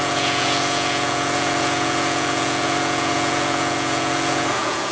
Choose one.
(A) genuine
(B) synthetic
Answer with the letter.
B